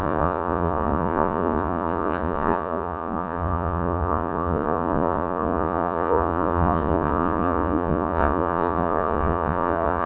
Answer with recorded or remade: remade